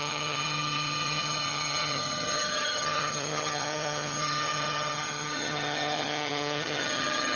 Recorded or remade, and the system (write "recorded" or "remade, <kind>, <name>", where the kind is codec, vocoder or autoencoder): remade, vocoder, HiFi-GAN